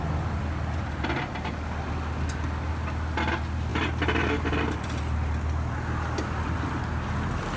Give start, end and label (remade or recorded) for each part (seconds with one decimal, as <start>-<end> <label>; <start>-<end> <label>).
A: 0.0-7.6 recorded